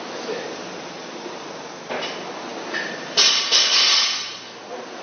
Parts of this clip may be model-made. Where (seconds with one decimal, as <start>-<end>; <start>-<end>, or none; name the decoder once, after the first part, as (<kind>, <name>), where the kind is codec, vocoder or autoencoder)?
none